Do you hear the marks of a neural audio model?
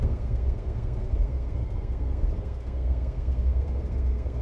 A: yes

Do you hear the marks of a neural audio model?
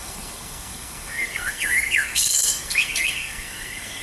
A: yes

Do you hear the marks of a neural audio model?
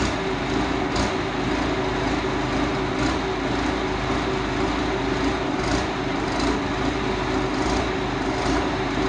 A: no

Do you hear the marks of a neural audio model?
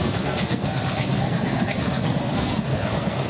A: yes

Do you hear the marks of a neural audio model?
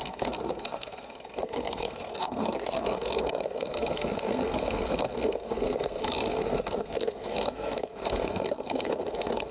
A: yes